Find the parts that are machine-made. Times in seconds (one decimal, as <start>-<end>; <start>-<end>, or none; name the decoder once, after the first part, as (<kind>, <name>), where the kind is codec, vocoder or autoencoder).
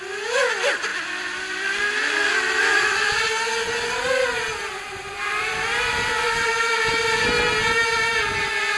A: 0.9-1.8 (vocoder, BigVGAN v2); 2.6-3.1; 4.6-6.9